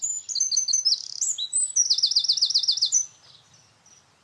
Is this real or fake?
real